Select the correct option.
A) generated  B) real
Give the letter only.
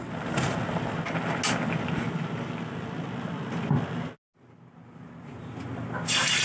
B